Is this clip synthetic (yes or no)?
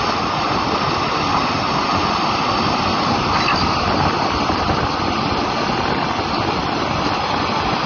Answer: no